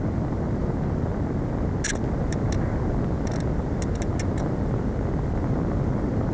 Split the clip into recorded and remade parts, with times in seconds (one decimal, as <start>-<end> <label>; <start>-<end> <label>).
0.0-6.3 recorded